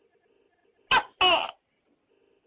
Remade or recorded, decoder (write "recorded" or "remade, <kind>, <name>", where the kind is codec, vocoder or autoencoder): recorded